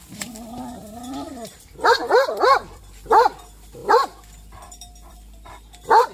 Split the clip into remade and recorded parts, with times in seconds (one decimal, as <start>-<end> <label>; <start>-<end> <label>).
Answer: 0.0-2.0 recorded; 2.0-2.8 remade; 2.8-3.8 recorded; 3.8-5.5 remade; 5.5-6.1 recorded